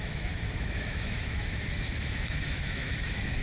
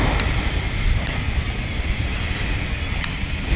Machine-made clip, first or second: first